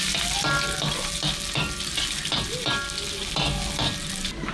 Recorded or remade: recorded